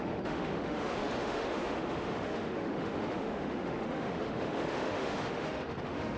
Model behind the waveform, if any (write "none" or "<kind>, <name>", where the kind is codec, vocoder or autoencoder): autoencoder, DAC-VAE